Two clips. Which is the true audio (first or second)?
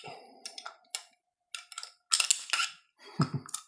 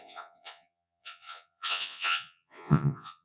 first